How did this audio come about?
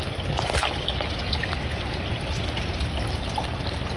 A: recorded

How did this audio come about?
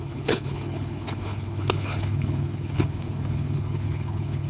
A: remade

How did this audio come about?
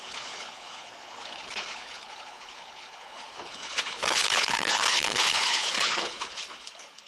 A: remade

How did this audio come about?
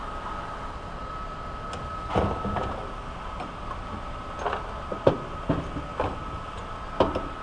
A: recorded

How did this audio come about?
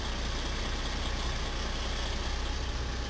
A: recorded